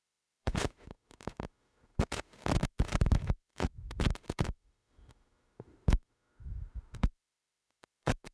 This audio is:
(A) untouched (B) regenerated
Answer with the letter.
B